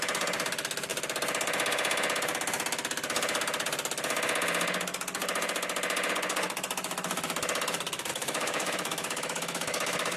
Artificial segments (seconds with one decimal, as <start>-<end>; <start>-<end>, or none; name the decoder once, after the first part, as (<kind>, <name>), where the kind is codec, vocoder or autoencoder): 8.1-10.2 (autoencoder, DAC-VAE)

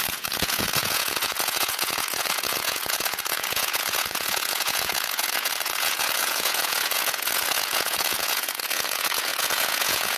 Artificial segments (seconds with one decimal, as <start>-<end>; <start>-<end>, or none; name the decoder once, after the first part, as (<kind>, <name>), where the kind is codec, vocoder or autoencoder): 0.0-10.2 (vocoder, Vocos)

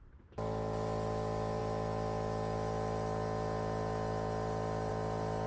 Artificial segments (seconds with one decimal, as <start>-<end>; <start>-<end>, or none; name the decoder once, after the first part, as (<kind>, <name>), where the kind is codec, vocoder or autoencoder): none

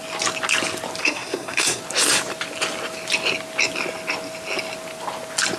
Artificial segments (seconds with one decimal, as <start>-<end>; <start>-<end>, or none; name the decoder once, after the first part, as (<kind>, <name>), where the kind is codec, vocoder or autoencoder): 1.0-1.8 (codec, SNAC)

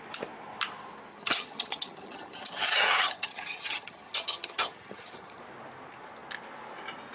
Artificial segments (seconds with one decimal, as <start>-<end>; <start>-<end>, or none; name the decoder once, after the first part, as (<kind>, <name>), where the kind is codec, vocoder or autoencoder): 1.1-5.4 (vocoder, HiFi-GAN)

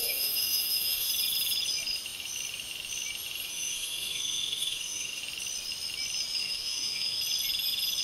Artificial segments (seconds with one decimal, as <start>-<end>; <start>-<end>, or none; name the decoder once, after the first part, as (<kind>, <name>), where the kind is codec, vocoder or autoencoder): 0.0-1.1 (autoencoder, DAC-VAE); 3.5-5.2; 6.4-7.2

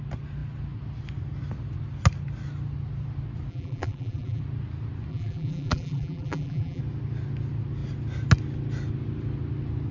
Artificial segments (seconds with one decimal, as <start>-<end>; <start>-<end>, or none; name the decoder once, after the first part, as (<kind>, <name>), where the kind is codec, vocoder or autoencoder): 3.5-4.4 (vocoder, BigVGAN v2); 5.1-6.8

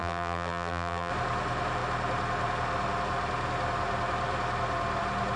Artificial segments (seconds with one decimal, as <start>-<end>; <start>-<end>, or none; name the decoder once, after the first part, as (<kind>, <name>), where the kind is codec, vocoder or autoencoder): 0.0-1.1 (vocoder, BigVGAN v2)